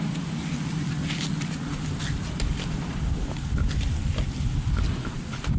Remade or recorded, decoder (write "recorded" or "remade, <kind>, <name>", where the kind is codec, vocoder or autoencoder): recorded